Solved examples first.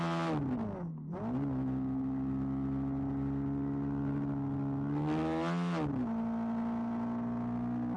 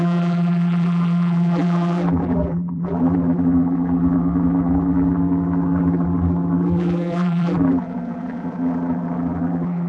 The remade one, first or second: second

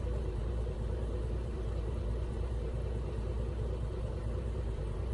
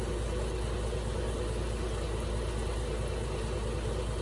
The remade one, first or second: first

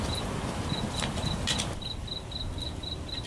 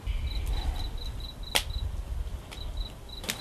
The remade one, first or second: first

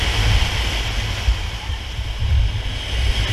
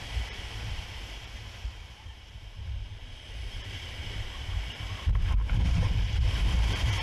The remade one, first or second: second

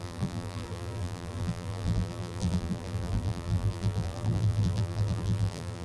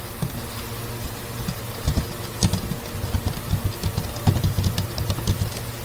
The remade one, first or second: first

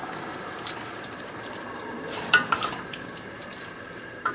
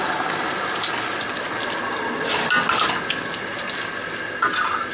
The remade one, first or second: first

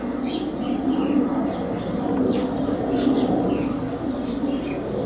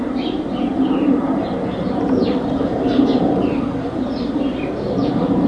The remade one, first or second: second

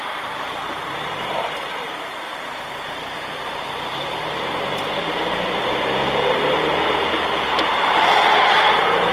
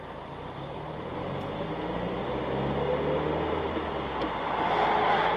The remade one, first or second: first